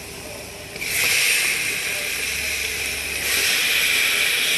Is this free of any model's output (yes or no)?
yes